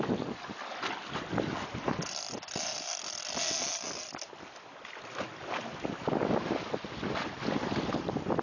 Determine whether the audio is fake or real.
real